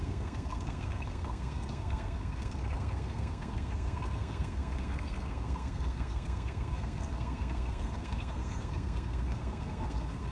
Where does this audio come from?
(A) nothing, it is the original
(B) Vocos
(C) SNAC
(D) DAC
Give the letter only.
C